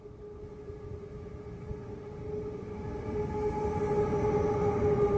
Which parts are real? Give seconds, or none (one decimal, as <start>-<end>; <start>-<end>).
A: 0.0-5.2